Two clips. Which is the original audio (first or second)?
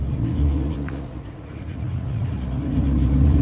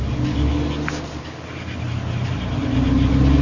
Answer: second